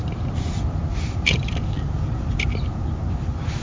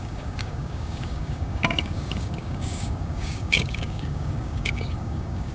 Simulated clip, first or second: second